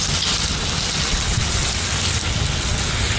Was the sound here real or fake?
real